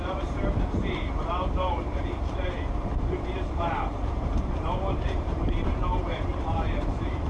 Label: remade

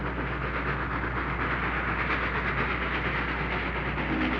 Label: recorded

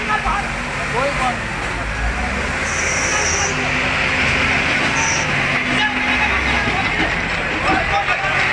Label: recorded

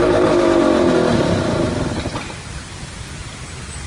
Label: recorded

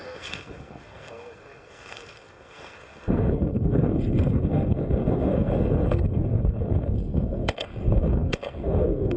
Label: remade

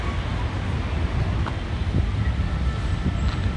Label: recorded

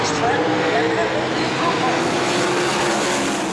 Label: recorded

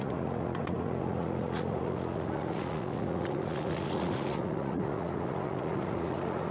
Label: remade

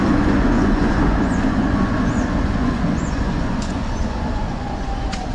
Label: remade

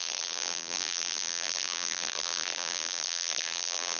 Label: remade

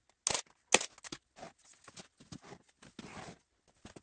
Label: recorded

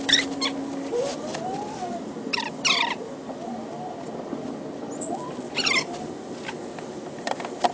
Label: recorded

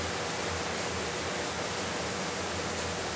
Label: recorded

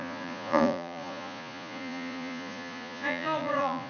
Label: remade